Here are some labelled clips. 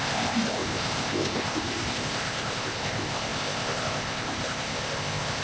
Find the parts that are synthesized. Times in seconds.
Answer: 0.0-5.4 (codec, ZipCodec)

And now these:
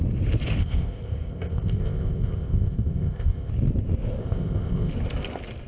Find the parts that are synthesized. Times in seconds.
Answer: 0.6-3.5 (codec, ZipCodec); 4.2-4.9

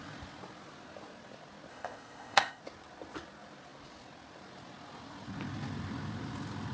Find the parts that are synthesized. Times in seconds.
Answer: 1.7-2.6 (codec, ZipCodec)

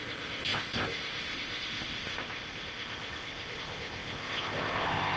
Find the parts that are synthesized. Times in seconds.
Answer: 0.0-5.2 (codec, ZipCodec)

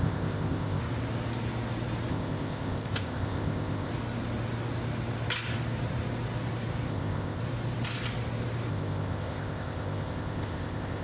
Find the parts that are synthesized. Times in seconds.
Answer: 0.0-0.8 (codec, ZipCodec); 2.1-3.9; 6.9-7.4; 8.7-11.0